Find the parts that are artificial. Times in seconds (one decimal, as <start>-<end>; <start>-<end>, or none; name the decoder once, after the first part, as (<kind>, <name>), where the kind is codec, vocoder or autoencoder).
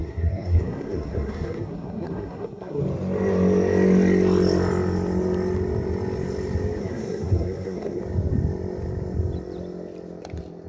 0.0-2.8 (codec, SNAC); 6.8-8.0